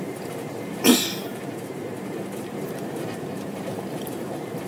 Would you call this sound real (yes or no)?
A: no